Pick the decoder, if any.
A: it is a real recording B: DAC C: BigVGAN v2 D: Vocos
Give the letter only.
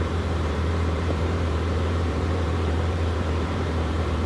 C